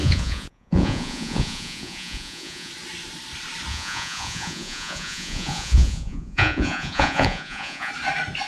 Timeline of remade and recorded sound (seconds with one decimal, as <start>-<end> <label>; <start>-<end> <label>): 0.0-2.7 remade; 2.7-3.7 recorded; 3.7-7.9 remade; 7.9-8.5 recorded